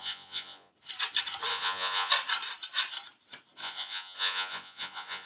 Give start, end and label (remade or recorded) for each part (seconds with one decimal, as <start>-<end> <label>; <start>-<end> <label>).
0.0-0.7 remade; 0.7-1.5 recorded; 1.5-2.1 remade; 2.1-3.6 recorded; 3.6-5.3 remade